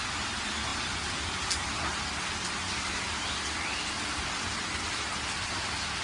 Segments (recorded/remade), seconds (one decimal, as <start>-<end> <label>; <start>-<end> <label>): 0.0-6.0 recorded